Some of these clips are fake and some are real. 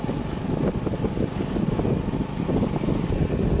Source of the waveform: real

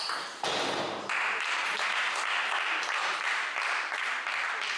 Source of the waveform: real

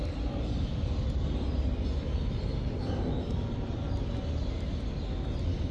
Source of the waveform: real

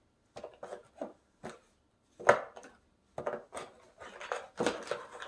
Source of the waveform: real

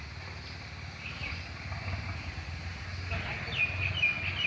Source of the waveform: real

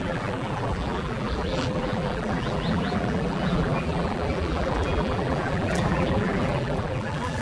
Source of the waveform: fake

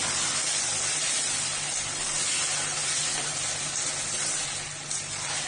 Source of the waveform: real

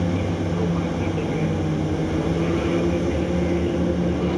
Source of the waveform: real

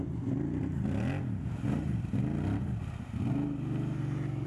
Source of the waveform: real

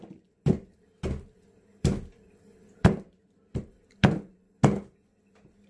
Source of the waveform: real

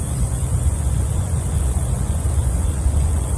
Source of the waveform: fake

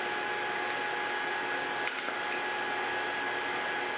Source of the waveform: real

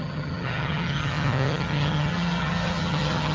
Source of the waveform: fake